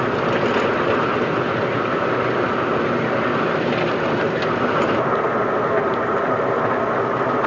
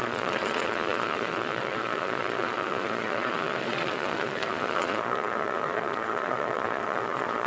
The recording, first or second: first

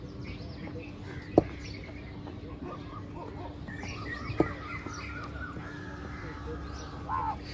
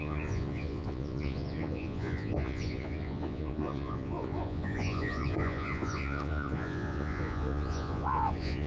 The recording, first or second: first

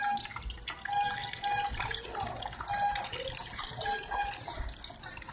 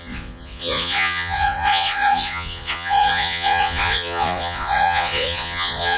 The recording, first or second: first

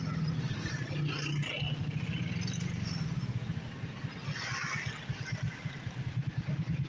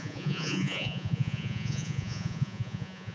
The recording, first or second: first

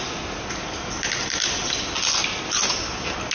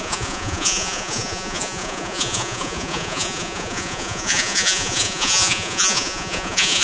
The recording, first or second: first